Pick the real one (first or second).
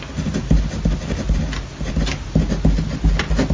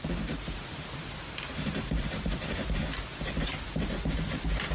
first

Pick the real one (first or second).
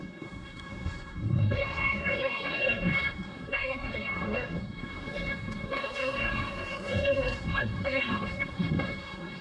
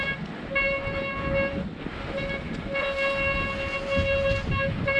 second